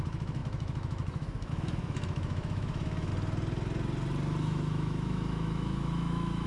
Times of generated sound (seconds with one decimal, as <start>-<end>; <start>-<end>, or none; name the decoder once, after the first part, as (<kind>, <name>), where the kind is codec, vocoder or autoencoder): 0.0-3.1 (autoencoder, DAC-VAE); 4.4-6.5